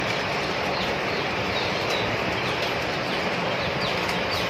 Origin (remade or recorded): recorded